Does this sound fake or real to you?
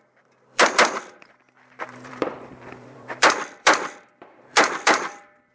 fake